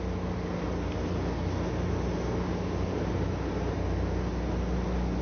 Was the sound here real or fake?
real